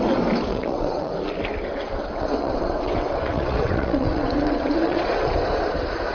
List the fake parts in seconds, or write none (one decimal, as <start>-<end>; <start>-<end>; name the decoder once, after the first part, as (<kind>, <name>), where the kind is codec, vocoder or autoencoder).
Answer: 0.5-1.1 (vocoder, WaveNeXt); 1.7-5.4